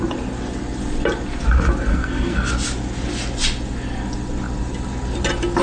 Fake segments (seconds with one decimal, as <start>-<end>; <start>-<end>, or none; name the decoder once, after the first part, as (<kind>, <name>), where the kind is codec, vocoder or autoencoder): 1.9-2.5 (codec, SNAC)

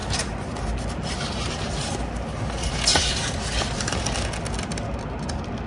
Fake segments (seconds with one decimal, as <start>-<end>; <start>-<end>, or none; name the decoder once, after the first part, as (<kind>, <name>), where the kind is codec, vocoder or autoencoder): 0.0-2.1 (vocoder, BigVGAN v2); 2.9-3.7

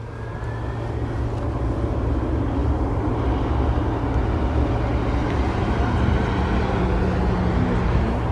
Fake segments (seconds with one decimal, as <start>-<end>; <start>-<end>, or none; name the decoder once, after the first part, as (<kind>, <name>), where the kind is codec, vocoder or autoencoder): none

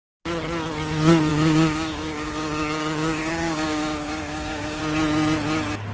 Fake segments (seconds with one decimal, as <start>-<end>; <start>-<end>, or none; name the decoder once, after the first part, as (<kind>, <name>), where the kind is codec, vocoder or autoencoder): 1.3-4.8 (codec, DAC)

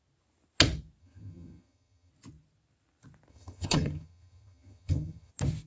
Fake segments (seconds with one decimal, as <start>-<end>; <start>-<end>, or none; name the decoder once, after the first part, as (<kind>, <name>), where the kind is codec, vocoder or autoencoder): 1.0-2.1 (vocoder, HiFi-GAN); 3.3-5.3

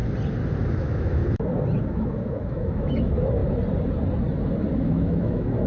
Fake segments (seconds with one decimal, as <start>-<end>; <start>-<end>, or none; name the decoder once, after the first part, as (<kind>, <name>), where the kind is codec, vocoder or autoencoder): 0.6-1.2 (autoencoder, DAC-VAE); 1.8-3.4; 4.8-5.7